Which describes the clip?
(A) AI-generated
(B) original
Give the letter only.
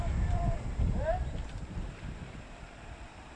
A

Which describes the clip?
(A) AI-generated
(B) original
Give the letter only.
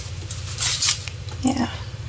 B